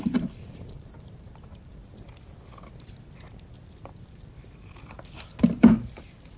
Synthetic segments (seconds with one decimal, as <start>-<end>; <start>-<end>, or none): 0.0-1.8; 5.6-6.4